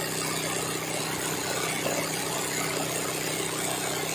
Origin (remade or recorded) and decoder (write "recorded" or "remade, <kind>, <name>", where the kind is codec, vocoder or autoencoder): recorded